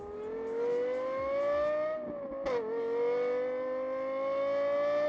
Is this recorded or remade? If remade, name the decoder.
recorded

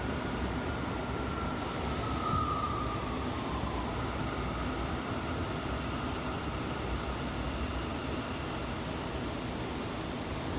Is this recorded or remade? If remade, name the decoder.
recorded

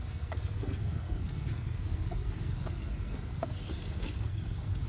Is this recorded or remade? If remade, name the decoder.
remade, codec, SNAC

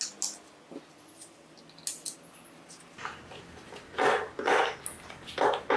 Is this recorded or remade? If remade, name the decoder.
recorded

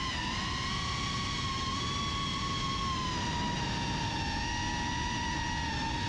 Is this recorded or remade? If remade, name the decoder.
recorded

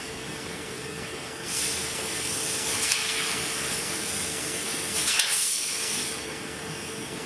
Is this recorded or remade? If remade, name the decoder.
remade, codec, SNAC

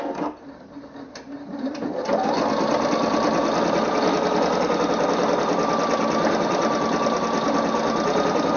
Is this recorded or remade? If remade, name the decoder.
recorded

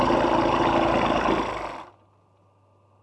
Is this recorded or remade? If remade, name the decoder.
recorded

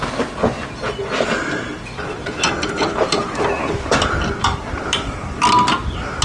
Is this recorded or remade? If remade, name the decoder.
recorded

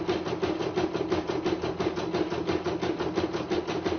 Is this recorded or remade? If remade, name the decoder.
recorded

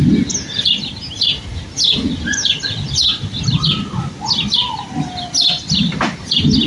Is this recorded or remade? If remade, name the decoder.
recorded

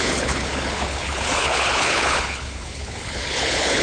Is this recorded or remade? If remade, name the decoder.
remade, codec, HILCodec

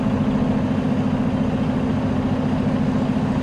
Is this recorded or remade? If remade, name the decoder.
recorded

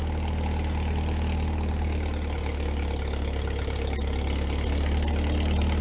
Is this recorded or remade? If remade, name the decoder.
recorded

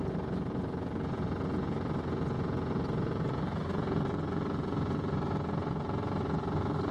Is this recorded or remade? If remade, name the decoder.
remade, vocoder, Vocos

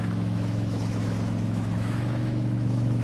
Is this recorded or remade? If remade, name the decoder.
remade, autoencoder, DAC-VAE